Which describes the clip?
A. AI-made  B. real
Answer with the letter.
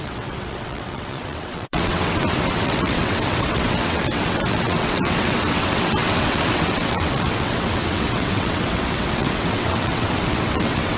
A